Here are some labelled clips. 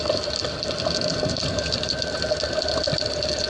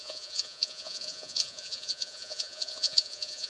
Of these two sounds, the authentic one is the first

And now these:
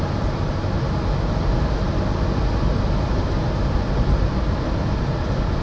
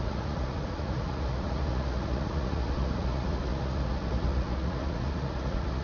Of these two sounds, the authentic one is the first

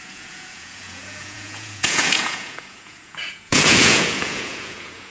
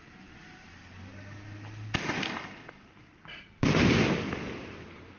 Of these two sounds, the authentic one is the second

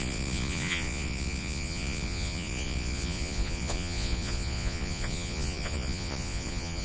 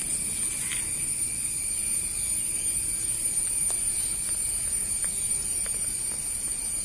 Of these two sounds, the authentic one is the second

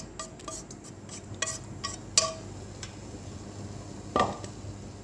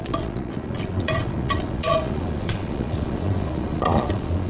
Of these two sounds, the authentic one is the first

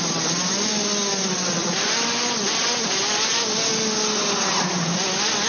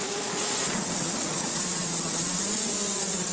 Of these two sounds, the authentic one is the first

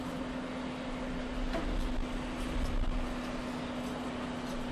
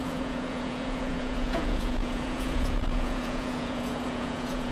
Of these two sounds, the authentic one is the first